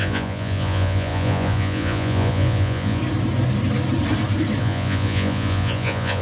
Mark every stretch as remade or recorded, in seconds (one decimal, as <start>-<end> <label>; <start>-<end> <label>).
0.0-3.0 remade; 3.0-4.6 recorded; 4.6-6.2 remade